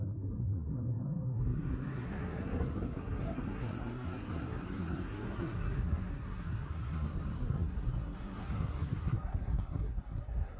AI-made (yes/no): yes